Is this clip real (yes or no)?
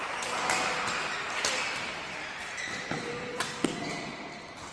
yes